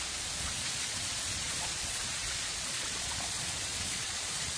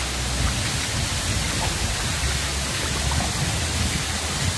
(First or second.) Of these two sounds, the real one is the second